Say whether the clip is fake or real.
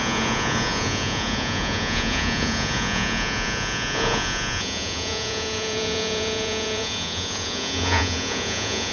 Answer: fake